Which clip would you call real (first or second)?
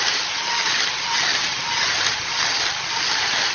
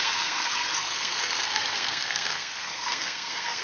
first